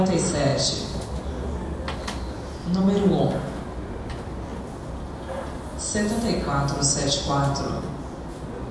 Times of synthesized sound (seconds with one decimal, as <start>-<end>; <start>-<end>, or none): none